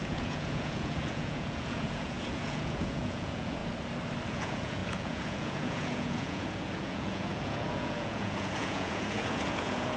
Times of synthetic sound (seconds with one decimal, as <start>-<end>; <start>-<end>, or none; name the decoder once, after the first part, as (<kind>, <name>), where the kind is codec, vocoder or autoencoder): 0.0-3.6 (vocoder, Vocos); 4.3-10.0